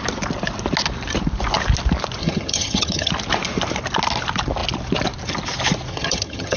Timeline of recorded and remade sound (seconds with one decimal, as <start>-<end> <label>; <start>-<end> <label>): 0.0-2.2 recorded; 2.2-3.1 remade; 3.1-5.9 recorded; 5.9-6.6 remade